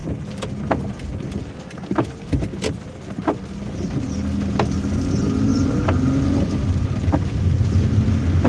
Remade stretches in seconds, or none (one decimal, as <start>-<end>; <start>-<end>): none